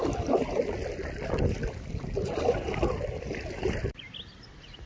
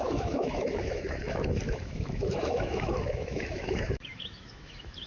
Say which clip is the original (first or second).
first